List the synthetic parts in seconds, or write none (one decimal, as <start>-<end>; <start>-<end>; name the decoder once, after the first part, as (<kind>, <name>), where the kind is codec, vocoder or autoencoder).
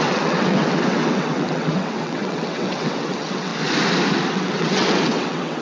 0.0-3.5 (vocoder, WaveNeXt); 4.3-5.6